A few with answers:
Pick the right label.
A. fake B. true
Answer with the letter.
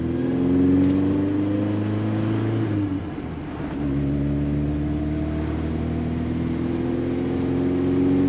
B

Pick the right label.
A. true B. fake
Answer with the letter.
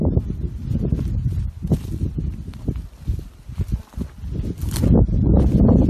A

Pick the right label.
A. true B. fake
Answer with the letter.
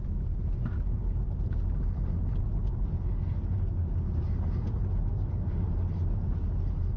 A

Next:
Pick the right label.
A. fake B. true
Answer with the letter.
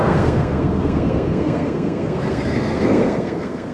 A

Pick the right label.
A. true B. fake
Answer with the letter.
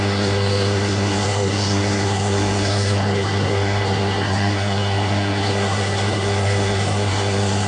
B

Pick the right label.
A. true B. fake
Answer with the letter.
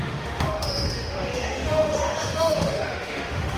B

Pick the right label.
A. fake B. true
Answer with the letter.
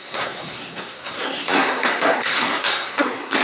A